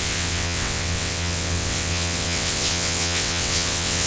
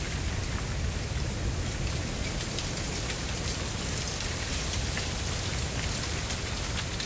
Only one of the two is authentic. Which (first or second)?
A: second